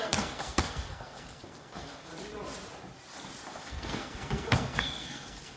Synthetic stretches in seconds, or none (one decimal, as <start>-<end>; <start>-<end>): 0.0-2.1; 3.5-5.6